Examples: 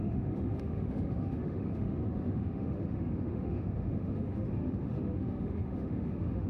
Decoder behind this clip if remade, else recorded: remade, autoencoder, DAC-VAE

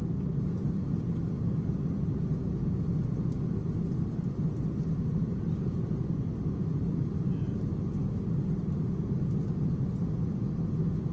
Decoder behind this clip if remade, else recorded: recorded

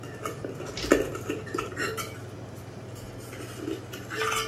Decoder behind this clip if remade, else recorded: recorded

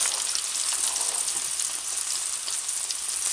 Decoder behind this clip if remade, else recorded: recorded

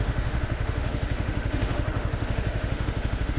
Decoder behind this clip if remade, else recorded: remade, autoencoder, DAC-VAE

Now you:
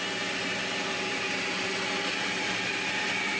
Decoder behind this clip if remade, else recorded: recorded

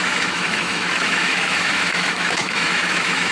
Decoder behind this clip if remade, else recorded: remade, autoencoder, DAC-VAE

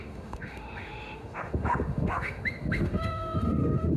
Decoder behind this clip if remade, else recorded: remade, autoencoder, DAC-VAE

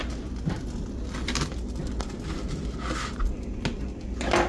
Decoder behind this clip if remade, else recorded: recorded